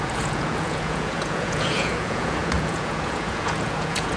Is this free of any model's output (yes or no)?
no